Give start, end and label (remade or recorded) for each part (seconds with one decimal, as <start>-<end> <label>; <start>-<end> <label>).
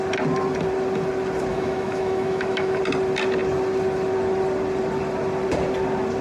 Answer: 0.0-1.5 recorded; 1.5-2.8 remade; 2.8-6.2 recorded